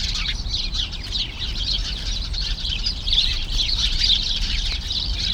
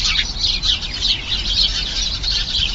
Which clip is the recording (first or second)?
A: second